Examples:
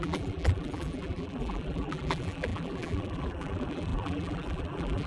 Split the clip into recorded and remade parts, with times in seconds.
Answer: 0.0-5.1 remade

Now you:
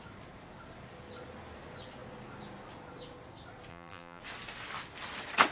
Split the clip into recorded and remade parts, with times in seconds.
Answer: 0.0-3.7 recorded; 3.7-4.2 remade; 4.2-5.5 recorded

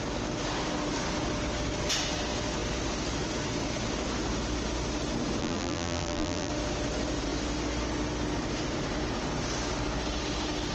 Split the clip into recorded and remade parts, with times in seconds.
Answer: 0.0-5.4 recorded; 5.4-6.5 remade; 6.5-10.7 recorded

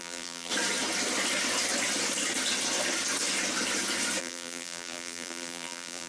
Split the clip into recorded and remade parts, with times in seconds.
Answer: 0.0-0.5 remade; 0.5-4.2 recorded; 4.2-6.1 remade

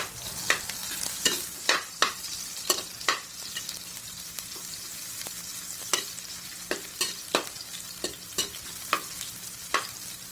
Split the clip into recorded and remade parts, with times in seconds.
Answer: 0.0-5.5 remade; 5.5-6.3 recorded; 6.3-10.3 remade